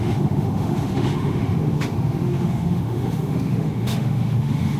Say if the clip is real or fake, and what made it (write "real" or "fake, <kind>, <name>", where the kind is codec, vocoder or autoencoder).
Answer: fake, autoencoder, DAC-VAE